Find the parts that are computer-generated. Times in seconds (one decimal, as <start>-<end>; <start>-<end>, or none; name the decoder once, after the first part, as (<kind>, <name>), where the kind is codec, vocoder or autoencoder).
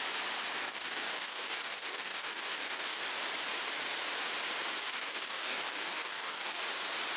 0.6-3.0 (codec, DAC); 4.8-6.6